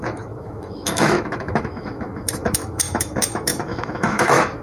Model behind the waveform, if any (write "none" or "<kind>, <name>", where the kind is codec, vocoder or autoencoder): autoencoder, DAC-VAE